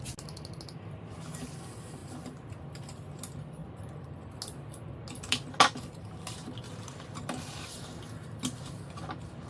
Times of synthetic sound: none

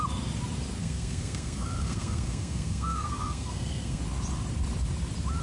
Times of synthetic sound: 0.8-4.0 (codec, SNAC)

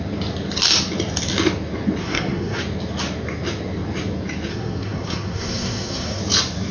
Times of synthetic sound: 2.0-2.6 (codec, SNAC); 4.5-6.2

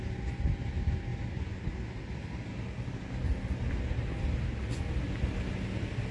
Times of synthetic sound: none